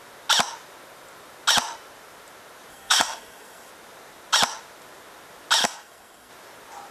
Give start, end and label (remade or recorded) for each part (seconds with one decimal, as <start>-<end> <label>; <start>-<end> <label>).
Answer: 0.0-2.7 recorded; 2.7-3.7 remade; 3.7-5.6 recorded; 5.6-6.3 remade; 6.3-6.9 recorded